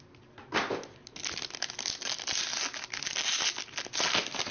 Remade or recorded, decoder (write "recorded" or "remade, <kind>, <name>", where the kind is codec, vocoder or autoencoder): recorded